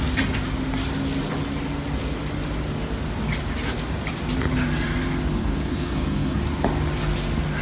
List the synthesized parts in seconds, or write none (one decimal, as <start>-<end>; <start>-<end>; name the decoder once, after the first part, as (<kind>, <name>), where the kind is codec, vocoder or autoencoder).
5.4-6.4 (codec, SNAC)